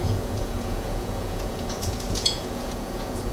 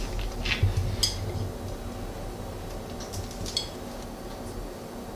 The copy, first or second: first